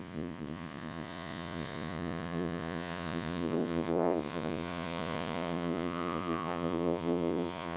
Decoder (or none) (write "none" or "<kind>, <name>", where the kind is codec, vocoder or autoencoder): vocoder, Vocos